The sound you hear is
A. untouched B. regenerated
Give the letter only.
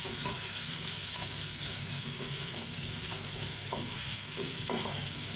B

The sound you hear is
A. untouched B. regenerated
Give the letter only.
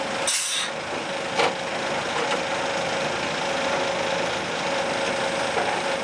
A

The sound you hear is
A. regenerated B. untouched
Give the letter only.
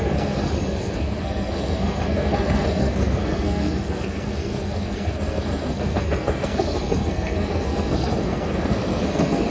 A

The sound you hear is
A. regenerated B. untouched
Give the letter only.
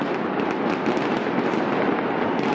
B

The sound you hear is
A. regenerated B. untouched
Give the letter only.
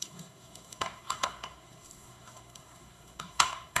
A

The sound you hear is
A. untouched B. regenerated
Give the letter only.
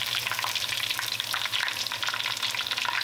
A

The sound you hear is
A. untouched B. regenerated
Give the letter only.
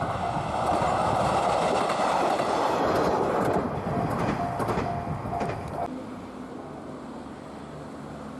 A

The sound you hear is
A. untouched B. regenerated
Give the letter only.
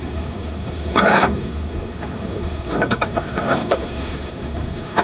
B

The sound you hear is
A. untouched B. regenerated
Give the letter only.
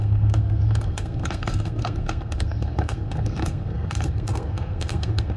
B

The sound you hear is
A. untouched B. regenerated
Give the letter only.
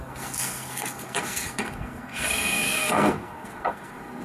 B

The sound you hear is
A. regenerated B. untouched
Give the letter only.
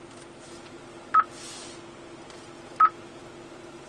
B